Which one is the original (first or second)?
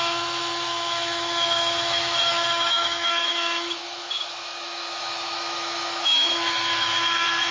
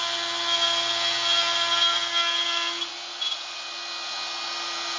second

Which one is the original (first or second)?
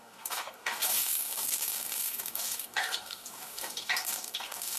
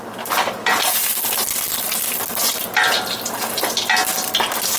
second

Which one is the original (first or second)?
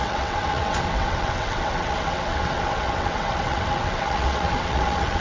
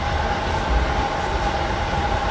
second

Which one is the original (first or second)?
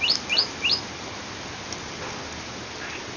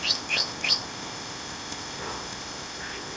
first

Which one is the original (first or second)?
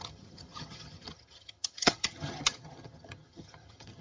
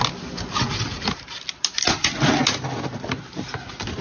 second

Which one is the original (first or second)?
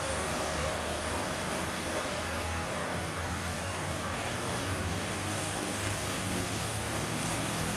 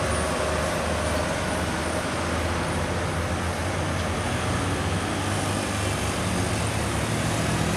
second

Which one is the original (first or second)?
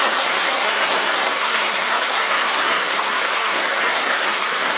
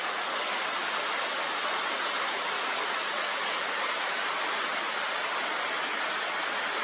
second